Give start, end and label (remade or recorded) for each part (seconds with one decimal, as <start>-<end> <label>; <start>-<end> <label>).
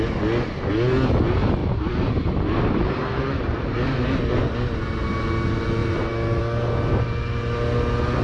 0.0-1.6 recorded; 1.6-4.4 remade; 4.4-5.8 recorded; 5.8-6.4 remade; 6.4-8.2 recorded